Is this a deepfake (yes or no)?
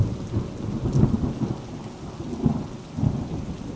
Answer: no